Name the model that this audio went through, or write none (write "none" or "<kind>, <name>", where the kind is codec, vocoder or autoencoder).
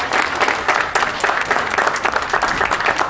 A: none